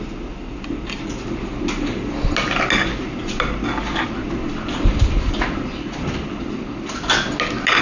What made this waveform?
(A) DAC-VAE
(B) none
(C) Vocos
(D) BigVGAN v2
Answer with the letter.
B